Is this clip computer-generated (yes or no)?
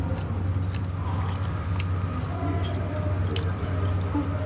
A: no